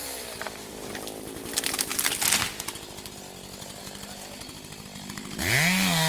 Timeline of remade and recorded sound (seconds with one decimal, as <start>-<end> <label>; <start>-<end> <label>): 0.0-0.9 remade; 0.9-6.1 recorded